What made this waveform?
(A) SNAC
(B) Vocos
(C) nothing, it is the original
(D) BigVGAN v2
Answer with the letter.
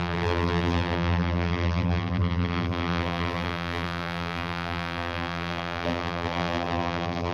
D